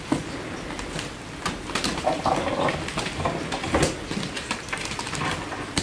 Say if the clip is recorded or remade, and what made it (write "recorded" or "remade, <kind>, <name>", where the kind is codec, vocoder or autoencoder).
recorded